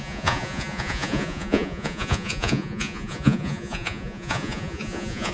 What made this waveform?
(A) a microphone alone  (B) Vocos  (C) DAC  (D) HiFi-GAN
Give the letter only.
B